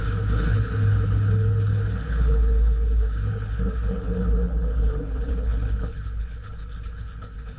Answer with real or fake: fake